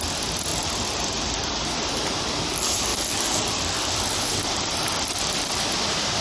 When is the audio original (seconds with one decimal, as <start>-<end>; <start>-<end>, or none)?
0.0-0.5; 1.6-2.9